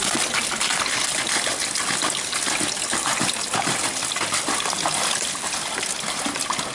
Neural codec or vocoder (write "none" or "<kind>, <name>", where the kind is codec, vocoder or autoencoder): none